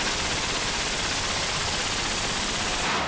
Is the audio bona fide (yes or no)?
yes